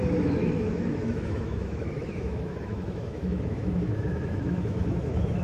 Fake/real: fake